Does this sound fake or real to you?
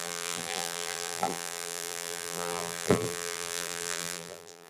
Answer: fake